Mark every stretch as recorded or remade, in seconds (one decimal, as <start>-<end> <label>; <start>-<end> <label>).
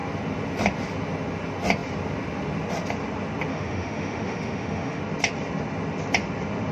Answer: 0.0-3.5 recorded; 3.5-5.0 remade; 5.0-6.7 recorded